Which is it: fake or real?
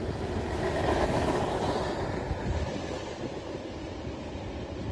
real